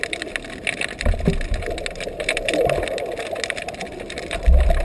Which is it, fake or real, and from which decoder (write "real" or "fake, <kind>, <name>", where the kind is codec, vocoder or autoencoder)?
real